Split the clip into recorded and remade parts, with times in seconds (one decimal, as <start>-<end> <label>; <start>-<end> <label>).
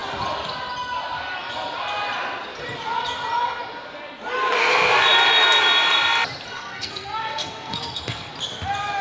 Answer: 0.0-6.5 recorded; 6.5-8.3 remade; 8.3-9.0 recorded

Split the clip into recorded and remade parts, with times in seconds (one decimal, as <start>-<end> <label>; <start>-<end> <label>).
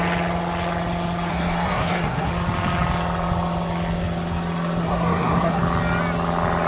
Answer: 0.0-1.3 recorded; 1.3-2.3 remade; 2.3-4.8 recorded; 4.8-5.6 remade; 5.6-6.7 recorded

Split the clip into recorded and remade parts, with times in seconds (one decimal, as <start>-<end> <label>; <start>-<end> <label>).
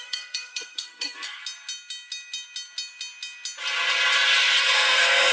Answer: 0.0-1.4 remade; 1.4-4.6 recorded; 4.6-5.3 remade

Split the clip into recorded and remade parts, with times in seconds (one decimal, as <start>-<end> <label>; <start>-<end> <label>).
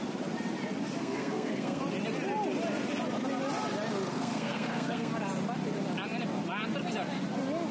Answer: 0.0-1.0 recorded; 1.0-1.8 remade; 1.8-4.1 recorded; 4.1-5.1 remade; 5.1-7.7 recorded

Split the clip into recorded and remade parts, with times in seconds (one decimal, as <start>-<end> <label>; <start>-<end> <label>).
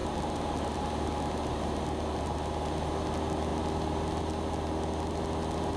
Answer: 0.0-5.8 recorded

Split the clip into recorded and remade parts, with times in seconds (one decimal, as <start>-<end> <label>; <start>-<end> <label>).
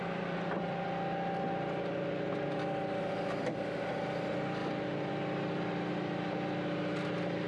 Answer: 0.0-7.5 recorded